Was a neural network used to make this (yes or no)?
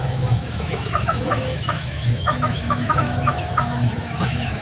yes